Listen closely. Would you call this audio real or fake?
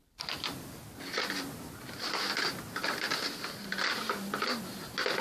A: real